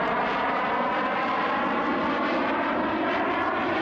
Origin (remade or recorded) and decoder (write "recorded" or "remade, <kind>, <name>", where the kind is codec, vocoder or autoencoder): recorded